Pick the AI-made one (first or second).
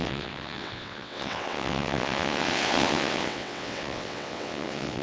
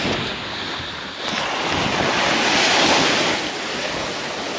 first